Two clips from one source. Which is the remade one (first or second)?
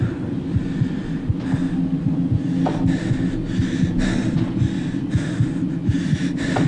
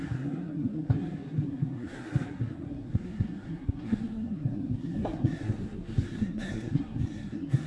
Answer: second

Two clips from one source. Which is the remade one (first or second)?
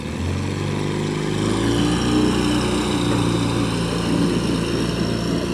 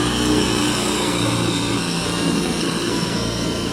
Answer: second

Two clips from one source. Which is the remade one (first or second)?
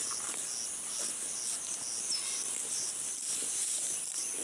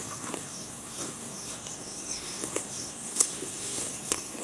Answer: second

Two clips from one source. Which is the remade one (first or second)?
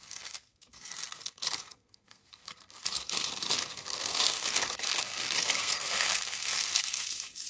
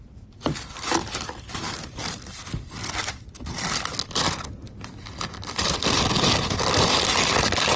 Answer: first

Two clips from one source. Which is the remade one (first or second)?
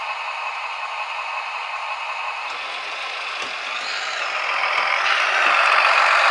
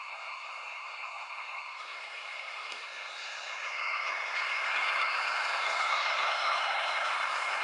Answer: second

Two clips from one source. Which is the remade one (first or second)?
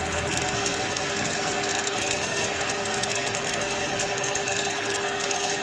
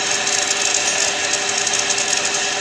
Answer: first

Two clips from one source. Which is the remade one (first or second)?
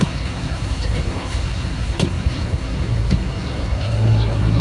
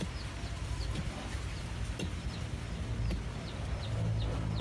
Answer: first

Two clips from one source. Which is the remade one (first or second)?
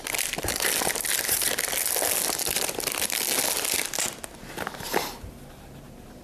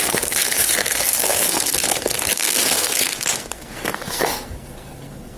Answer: second